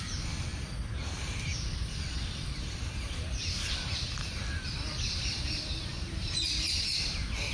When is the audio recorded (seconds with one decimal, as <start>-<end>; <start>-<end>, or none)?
0.0-1.5; 5.5-7.5